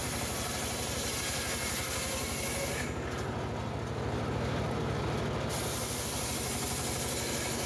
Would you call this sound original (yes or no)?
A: yes